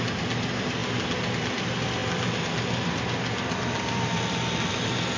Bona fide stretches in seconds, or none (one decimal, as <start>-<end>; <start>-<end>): 0.0-5.2